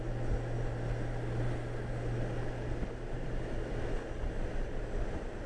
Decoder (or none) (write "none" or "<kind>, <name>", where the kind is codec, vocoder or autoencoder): none